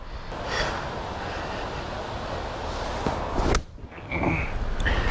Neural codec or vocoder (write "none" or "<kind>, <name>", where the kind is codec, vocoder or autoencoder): none